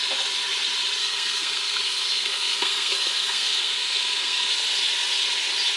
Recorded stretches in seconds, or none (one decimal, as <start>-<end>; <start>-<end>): 0.0-1.0; 4.5-5.8